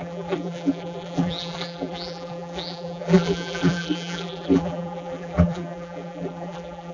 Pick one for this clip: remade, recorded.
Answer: remade